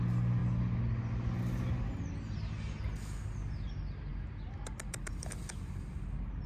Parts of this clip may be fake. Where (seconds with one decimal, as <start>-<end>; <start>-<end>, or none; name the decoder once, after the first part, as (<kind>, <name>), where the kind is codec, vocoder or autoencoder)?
none